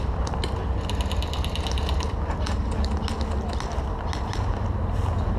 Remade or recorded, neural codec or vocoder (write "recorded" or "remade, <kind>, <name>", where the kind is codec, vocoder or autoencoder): recorded